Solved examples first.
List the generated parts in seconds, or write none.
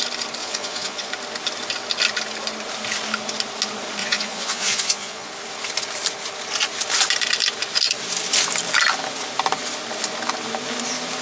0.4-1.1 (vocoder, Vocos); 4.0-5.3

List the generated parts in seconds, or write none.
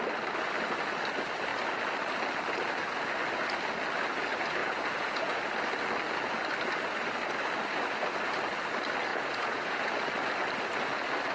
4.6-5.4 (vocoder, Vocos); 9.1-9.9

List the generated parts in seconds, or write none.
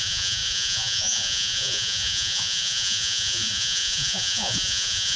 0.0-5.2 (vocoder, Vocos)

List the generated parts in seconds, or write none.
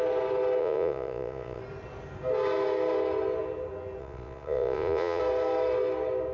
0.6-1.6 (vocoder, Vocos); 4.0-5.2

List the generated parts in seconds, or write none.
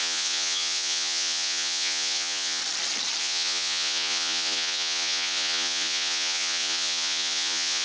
0.0-2.6 (vocoder, Vocos); 3.2-7.8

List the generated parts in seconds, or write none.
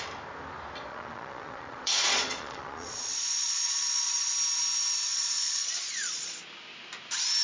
0.9-4.3 (vocoder, Vocos); 5.1-6.4